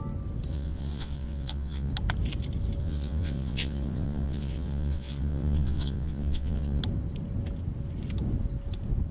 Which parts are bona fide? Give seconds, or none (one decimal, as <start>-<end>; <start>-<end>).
0.0-0.5; 1.9-2.8; 6.8-9.1